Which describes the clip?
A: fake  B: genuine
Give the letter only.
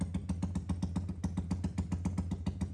B